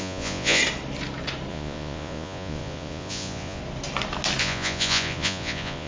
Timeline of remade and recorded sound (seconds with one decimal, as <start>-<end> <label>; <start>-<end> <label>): 0.0-0.6 remade; 0.6-1.5 recorded; 1.5-3.6 remade; 3.6-4.4 recorded; 4.4-5.9 remade